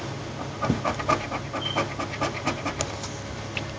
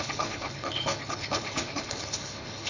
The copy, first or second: second